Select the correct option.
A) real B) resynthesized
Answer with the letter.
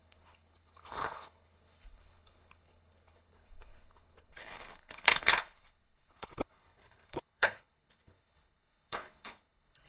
B